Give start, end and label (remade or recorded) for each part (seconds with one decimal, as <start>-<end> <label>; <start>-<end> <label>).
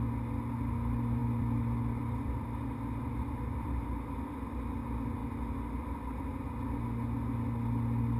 0.0-1.2 recorded; 1.2-3.8 remade; 3.8-8.2 recorded